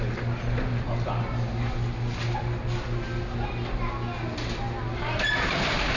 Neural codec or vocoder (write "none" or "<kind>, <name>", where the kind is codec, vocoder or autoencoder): none